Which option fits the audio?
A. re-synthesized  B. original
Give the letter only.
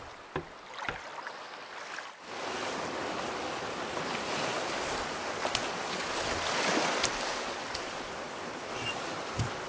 B